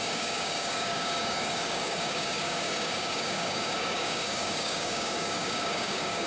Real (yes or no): no